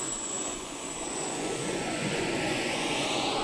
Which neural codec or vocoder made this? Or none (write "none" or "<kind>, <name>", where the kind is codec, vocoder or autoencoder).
vocoder, Vocos